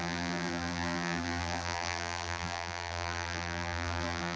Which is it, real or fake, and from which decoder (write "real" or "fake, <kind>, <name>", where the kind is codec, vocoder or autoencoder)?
fake, vocoder, BigVGAN v2